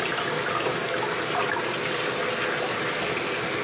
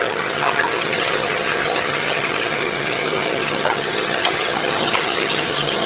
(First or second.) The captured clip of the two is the first